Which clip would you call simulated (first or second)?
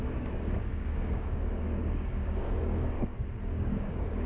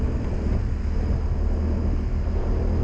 first